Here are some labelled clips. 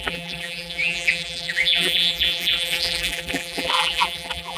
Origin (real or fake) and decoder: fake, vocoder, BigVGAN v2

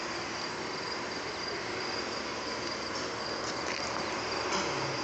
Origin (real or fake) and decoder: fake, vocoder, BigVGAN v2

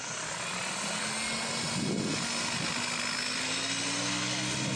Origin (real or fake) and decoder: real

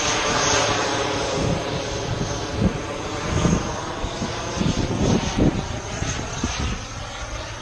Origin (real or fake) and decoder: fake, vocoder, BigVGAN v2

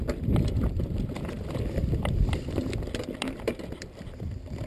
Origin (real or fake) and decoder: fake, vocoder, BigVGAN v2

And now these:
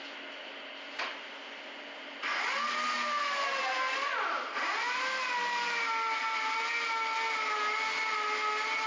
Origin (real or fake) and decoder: real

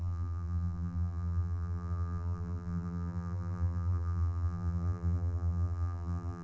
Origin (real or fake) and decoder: fake, vocoder, BigVGAN v2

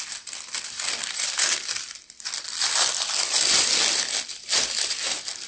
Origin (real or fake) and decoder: fake, vocoder, BigVGAN v2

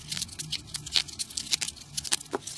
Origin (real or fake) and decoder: real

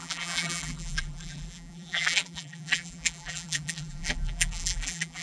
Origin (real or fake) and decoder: fake, vocoder, BigVGAN v2